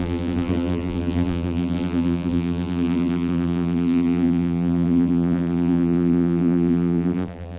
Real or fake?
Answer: fake